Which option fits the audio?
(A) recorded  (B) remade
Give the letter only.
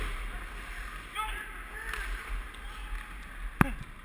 A